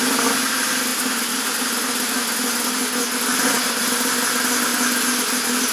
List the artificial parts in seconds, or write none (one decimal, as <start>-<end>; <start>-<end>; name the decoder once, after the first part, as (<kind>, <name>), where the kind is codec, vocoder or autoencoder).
none